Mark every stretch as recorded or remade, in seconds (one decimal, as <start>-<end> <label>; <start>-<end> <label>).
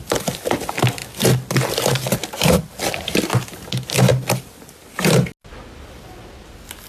0.0-6.9 recorded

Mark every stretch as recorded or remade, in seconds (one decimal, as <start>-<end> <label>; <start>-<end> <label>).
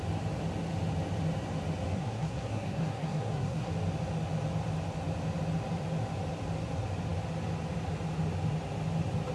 0.0-1.9 recorded; 1.9-3.7 remade; 3.7-9.3 recorded